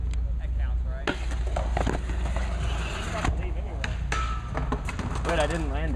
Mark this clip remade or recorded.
recorded